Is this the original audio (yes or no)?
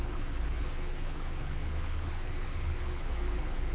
no